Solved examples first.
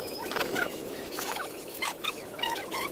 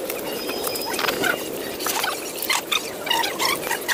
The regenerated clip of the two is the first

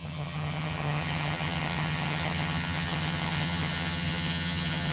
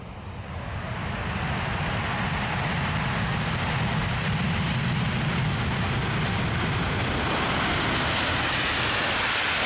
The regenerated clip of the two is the first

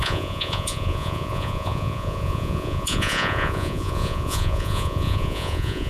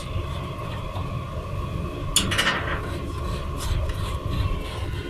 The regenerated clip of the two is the first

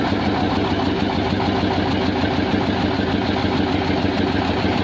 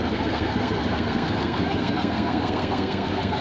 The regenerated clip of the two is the second